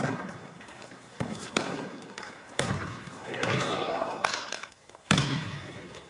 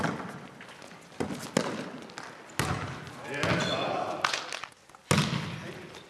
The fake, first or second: first